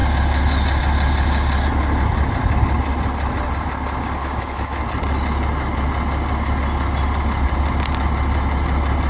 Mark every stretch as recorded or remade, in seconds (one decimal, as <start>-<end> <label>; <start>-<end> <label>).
0.0-4.2 recorded; 4.2-4.8 remade; 4.8-9.1 recorded